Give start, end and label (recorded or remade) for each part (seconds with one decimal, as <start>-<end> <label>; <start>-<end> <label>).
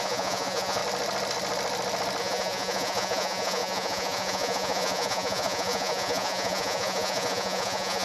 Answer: 0.0-0.8 remade; 0.8-2.2 recorded; 2.2-8.0 remade